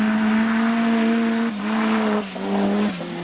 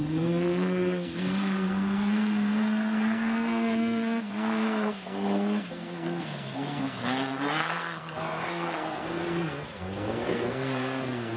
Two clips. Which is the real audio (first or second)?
first